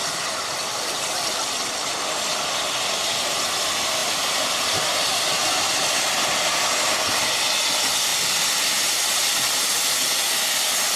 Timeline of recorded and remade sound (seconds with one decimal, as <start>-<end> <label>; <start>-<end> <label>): 0.0-1.9 remade; 1.9-4.0 recorded; 4.0-5.2 remade; 5.2-11.0 recorded